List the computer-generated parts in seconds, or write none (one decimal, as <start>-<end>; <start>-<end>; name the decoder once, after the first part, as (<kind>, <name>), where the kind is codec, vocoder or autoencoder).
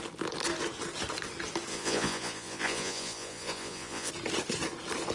1.7-4.1 (vocoder, Vocos)